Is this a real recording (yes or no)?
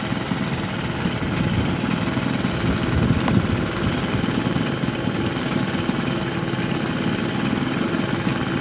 yes